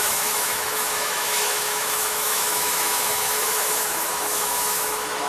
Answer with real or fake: fake